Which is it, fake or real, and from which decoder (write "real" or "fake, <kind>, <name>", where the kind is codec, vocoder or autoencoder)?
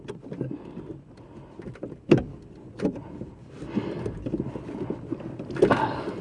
real